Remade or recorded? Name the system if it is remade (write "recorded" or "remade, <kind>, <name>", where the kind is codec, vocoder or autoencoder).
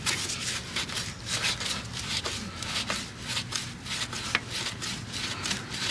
recorded